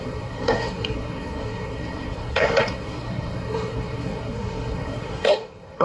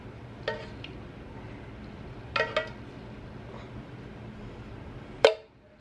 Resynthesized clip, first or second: first